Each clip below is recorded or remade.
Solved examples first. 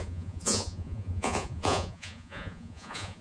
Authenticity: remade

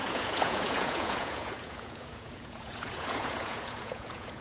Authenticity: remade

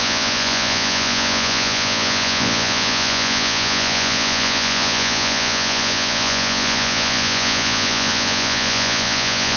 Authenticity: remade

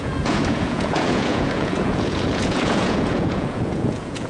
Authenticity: remade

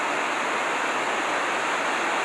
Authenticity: recorded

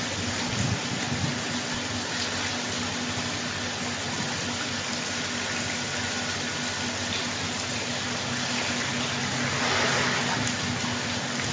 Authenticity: recorded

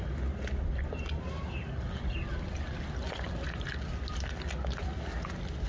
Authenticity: recorded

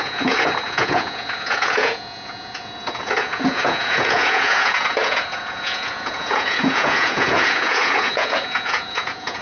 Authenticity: remade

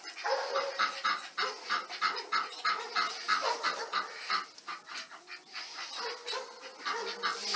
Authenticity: recorded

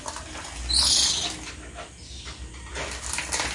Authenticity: recorded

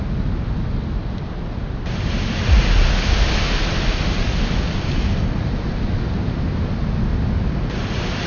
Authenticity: recorded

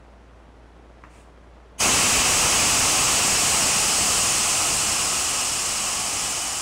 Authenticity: recorded